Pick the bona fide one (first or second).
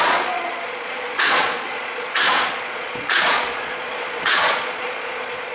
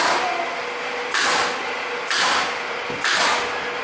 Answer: second